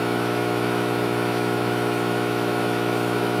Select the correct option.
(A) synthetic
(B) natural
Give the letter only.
A